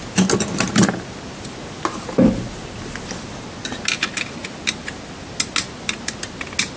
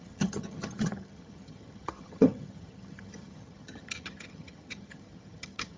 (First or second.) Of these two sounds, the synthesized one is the second